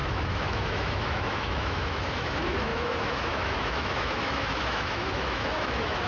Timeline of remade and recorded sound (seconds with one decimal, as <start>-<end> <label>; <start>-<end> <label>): 0.0-6.1 remade